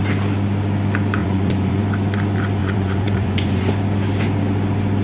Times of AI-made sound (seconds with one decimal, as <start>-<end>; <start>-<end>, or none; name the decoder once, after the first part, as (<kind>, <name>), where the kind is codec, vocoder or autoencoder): 1.2-1.8 (vocoder, Vocos); 2.6-3.7